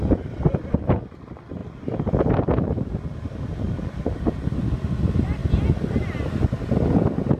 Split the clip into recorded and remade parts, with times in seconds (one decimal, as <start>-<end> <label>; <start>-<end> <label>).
0.0-7.4 recorded